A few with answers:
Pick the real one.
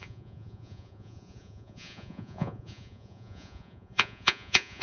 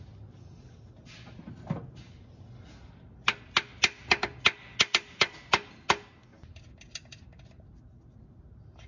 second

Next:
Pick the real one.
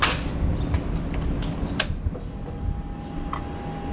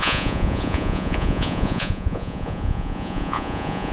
first